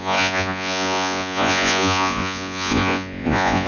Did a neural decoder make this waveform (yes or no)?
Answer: yes